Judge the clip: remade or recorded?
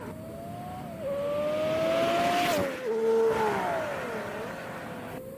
recorded